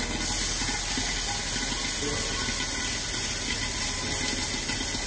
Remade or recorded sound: recorded